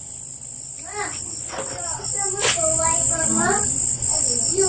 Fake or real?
real